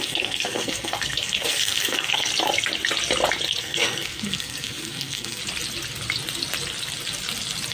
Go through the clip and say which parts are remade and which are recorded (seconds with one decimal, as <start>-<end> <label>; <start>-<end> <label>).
0.0-2.3 remade; 2.3-3.6 recorded; 3.6-5.4 remade; 5.4-7.7 recorded